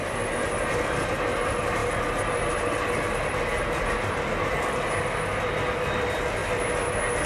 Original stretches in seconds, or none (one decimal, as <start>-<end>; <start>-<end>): 0.0-7.3